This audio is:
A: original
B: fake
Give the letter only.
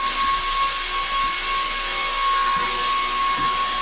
A